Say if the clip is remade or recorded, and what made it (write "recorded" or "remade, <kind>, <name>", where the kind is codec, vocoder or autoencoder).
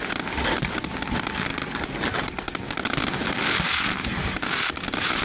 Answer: recorded